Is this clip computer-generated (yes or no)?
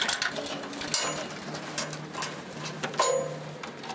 no